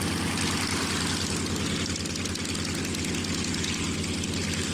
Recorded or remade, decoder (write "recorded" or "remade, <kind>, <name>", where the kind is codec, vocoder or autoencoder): recorded